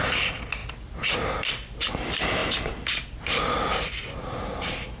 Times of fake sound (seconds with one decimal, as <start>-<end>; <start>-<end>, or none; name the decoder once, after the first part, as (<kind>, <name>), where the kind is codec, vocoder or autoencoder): none